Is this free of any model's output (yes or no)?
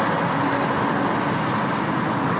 yes